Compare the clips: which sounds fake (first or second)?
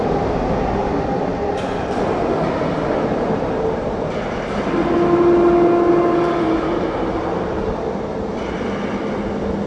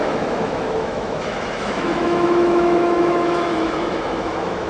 second